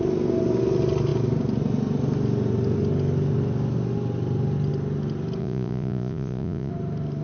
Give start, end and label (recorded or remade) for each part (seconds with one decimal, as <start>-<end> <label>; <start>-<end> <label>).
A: 0.0-5.4 recorded; 5.4-6.7 remade; 6.7-7.2 recorded